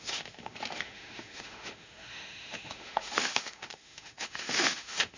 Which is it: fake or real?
fake